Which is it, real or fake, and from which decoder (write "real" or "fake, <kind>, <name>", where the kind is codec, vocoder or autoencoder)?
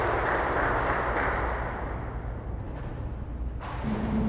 real